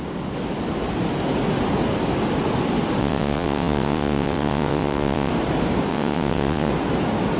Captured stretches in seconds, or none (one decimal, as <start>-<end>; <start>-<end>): 0.0-3.0; 5.3-5.9; 6.7-7.4